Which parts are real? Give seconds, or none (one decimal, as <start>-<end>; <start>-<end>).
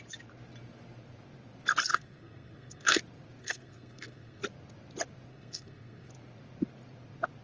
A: 0.0-1.9; 3.0-3.4; 4.4-5.3; 6.1-7.4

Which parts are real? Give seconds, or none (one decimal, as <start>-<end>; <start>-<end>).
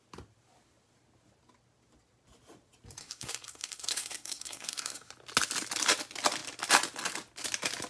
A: 0.0-3.0; 5.1-7.9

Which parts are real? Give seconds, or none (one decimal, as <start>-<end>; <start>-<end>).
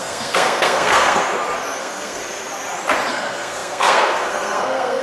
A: 1.2-1.8; 2.2-3.1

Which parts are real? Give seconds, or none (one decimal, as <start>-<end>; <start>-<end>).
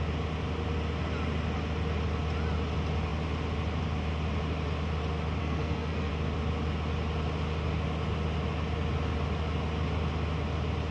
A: 0.0-5.4; 6.1-10.9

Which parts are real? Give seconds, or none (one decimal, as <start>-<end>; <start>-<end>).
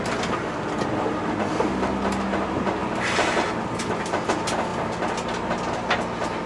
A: 0.0-6.5